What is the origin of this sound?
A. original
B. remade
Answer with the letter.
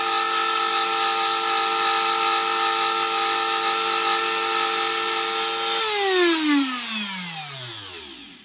A